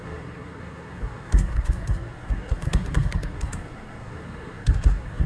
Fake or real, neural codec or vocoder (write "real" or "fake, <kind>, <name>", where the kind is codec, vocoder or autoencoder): fake, codec, SNAC